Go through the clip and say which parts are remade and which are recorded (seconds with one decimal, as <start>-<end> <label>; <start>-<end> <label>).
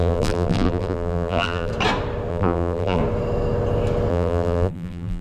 0.0-1.7 remade; 1.7-2.3 recorded; 2.3-3.0 remade; 3.0-4.1 recorded; 4.1-5.2 remade